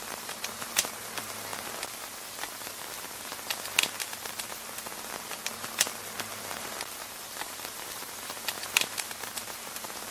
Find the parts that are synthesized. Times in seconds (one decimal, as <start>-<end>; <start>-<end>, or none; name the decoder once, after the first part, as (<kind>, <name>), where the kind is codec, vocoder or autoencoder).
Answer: 0.0-1.5 (vocoder, BigVGAN v2); 6.4-10.1

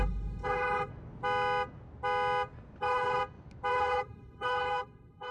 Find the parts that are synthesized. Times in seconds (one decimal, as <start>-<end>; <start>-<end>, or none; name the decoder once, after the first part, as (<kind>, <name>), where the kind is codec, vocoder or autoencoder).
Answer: 0.0-0.9 (codec, HILCodec); 2.8-3.2; 3.7-5.3

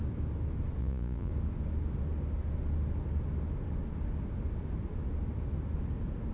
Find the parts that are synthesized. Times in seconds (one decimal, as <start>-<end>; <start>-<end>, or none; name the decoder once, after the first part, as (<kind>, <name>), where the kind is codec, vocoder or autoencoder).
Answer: 0.8-1.3 (vocoder, Vocos)

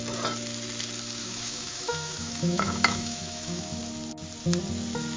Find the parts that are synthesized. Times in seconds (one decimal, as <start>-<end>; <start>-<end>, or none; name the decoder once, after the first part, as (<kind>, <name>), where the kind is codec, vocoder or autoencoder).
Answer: 1.2-3.8 (autoencoder, DAC-VAE)

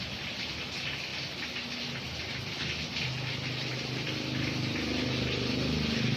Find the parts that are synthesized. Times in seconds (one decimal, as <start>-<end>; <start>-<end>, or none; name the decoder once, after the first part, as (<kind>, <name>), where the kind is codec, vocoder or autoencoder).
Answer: none